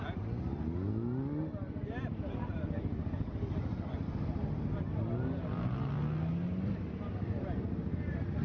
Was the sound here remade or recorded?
recorded